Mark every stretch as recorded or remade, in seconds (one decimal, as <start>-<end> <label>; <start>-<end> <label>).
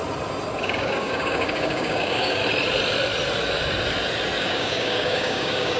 0.0-0.6 recorded; 0.6-2.4 remade; 2.4-4.4 recorded; 4.4-5.8 remade